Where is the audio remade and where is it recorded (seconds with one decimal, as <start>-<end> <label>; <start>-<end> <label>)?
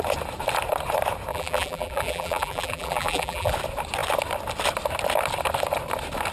0.0-1.3 recorded; 1.3-3.5 remade; 3.5-6.3 recorded